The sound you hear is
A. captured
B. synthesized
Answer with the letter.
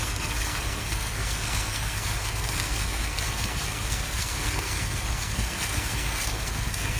B